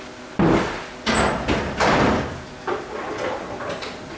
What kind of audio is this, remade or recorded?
recorded